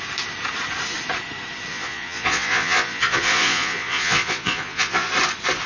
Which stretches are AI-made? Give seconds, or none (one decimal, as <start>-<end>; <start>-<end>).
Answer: 1.7-5.1